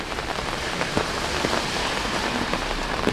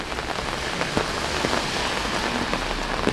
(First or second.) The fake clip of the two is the first